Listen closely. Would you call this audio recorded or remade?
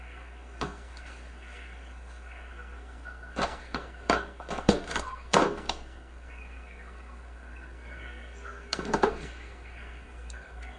remade